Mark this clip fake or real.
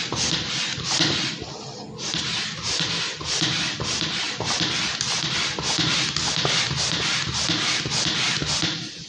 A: real